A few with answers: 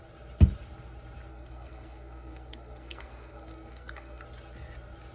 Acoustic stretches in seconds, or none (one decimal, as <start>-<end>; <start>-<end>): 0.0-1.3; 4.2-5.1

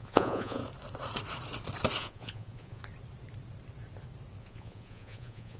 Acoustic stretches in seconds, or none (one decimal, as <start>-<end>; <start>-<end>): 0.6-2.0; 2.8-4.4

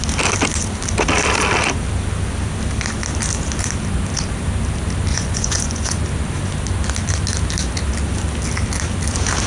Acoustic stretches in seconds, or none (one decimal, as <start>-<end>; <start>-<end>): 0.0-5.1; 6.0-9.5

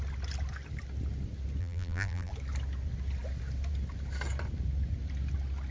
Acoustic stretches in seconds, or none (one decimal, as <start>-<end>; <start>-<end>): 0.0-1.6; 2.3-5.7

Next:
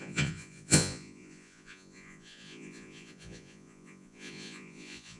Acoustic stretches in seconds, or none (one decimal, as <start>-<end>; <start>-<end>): none

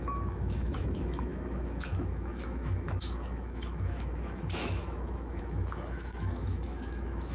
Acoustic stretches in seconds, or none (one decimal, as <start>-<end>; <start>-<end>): none